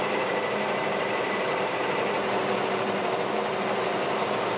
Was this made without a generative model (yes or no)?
no